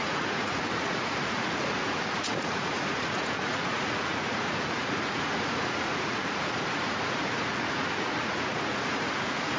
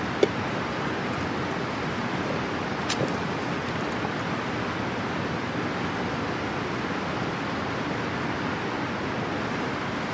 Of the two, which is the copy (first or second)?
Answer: first